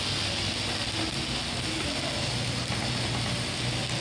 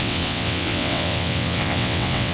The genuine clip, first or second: first